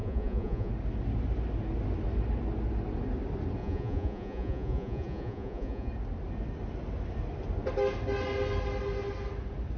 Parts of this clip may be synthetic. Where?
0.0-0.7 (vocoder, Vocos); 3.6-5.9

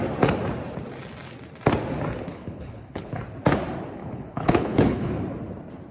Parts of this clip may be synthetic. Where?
2.3-3.2 (codec, HILCodec); 4.0-5.1

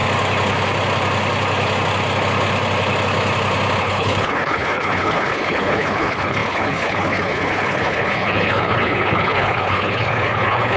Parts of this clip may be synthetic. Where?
3.8-10.8 (codec, HILCodec)

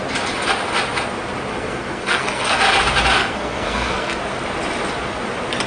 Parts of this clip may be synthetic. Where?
1.5-2.7 (codec, SNAC); 3.2-4.2

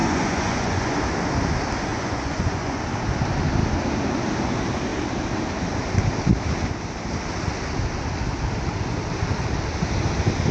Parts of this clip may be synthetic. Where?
0.0-1.0 (vocoder, Vocos); 1.9-2.8

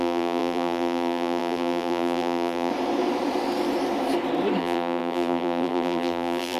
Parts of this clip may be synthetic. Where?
0.0-2.7 (vocoder, BigVGAN v2); 4.6-6.6